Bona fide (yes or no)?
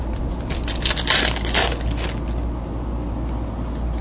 yes